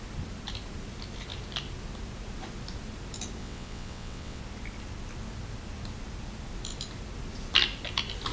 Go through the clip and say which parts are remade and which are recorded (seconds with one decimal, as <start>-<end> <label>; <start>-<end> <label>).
0.0-3.4 recorded; 3.4-4.4 remade; 4.4-8.3 recorded